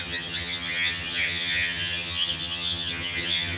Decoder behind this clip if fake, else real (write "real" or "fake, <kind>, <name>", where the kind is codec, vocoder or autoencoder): fake, vocoder, HiFi-GAN